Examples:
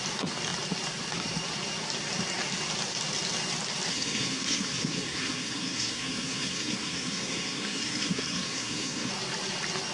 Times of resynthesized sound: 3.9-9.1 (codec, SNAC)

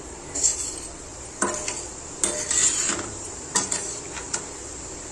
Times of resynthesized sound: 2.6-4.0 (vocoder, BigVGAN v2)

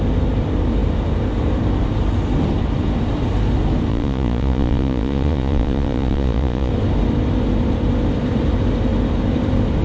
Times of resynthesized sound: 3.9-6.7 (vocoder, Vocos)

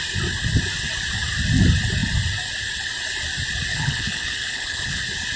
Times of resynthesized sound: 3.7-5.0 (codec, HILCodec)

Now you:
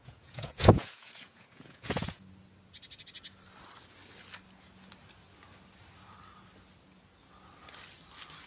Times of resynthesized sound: 0.0-2.2 (vocoder, Vocos)

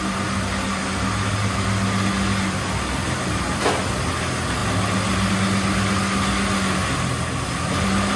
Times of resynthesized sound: none

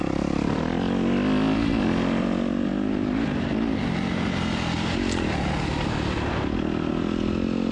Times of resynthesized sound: none